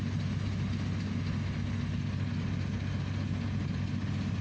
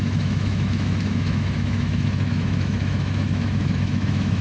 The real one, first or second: first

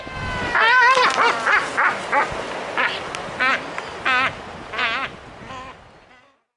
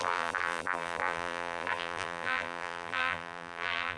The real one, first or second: first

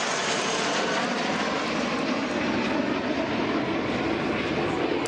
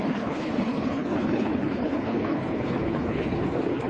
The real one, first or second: first